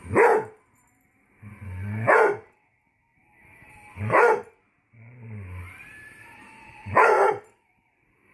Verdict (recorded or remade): recorded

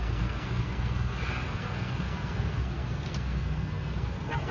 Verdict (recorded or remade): remade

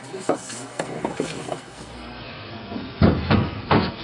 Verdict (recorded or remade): remade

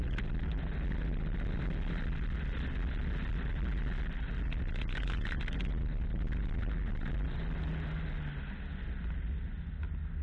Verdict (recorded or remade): recorded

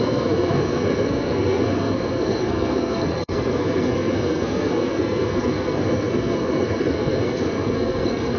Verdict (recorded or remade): remade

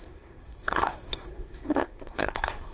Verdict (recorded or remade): remade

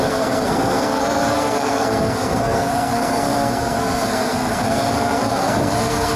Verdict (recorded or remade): remade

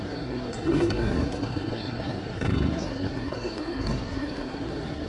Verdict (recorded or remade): remade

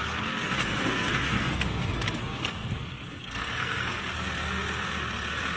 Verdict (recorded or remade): remade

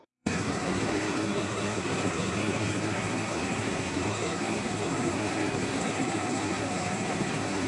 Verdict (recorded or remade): remade